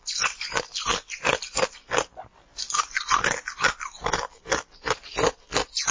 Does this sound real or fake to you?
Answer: real